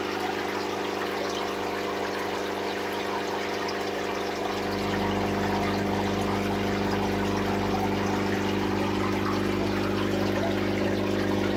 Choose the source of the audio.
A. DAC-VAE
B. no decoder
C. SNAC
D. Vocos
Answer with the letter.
B